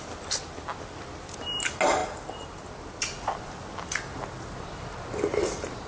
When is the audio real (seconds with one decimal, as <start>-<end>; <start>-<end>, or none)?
0.0-5.9